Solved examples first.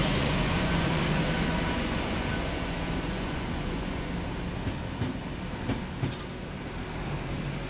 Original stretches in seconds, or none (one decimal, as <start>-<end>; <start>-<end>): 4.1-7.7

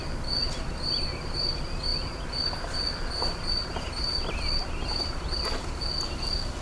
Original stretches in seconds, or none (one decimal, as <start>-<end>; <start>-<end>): 0.0-6.6

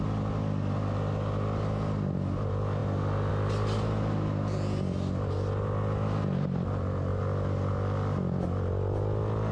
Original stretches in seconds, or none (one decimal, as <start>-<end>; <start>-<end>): 0.0-9.5